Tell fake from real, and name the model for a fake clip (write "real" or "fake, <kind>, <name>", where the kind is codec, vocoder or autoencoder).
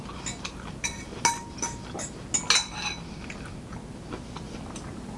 real